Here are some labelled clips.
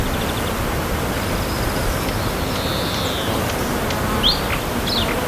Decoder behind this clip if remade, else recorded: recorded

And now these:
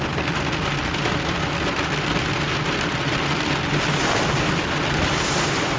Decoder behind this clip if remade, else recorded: recorded